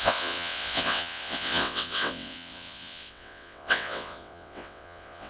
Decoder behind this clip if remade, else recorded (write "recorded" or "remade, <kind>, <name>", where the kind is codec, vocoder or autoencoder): remade, vocoder, WaveNeXt